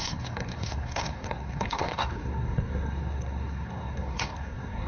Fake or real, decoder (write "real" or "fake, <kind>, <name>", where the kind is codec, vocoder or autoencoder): fake, codec, SNAC